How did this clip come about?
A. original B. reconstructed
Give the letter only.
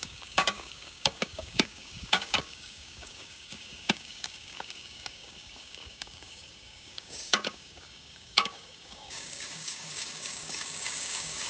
B